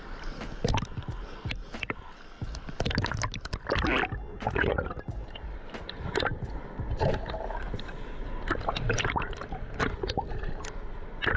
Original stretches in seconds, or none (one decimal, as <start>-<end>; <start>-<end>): 0.0-4.3; 4.9-11.4